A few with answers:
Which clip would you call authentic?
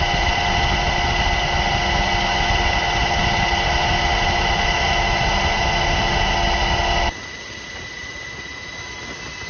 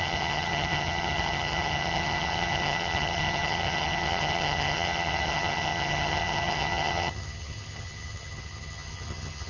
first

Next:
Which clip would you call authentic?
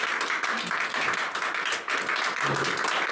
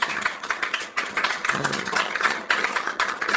first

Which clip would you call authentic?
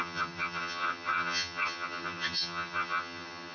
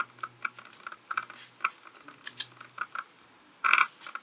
second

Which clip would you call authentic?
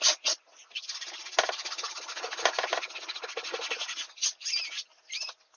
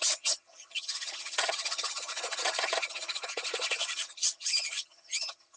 first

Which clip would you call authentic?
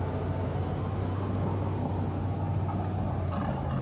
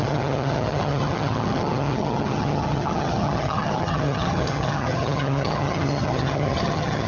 first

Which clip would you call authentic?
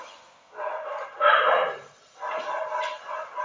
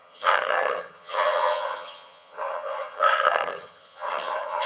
first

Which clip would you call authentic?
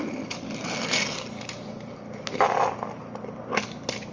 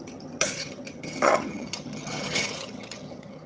first